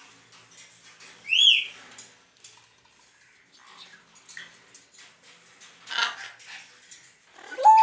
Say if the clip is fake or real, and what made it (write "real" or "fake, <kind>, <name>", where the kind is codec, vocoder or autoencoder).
real